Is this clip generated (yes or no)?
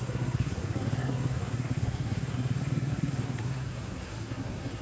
yes